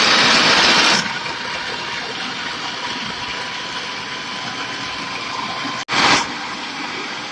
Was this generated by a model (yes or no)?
no